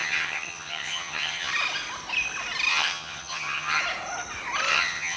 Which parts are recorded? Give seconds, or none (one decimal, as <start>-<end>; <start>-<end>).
1.5-2.7; 3.8-4.7